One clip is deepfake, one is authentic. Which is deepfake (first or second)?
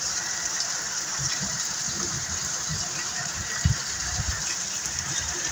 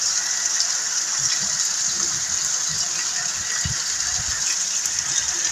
first